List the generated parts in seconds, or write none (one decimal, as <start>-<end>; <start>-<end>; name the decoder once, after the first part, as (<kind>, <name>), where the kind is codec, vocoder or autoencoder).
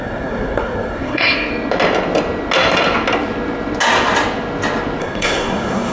0.0-1.5 (codec, SNAC); 5.0-5.9